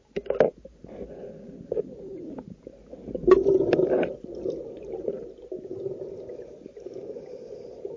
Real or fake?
real